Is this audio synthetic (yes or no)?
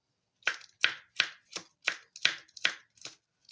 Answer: no